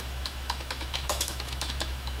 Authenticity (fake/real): fake